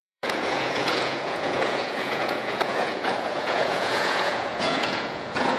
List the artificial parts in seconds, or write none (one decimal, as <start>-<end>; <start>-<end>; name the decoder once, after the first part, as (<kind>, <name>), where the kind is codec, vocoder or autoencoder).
0.0-5.6 (vocoder, Vocos)